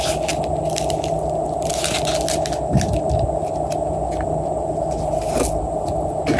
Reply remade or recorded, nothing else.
recorded